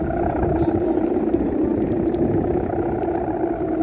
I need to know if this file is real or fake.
real